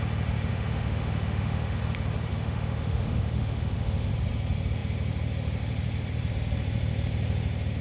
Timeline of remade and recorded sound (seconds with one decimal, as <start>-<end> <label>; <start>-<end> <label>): 0.0-0.5 recorded; 0.5-1.8 remade; 1.8-2.3 recorded; 2.3-4.1 remade; 4.1-7.8 recorded